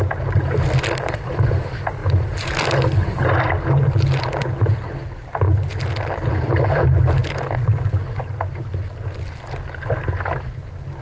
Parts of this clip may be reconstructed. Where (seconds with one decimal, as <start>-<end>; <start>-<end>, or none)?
none